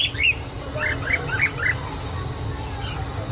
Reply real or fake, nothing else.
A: real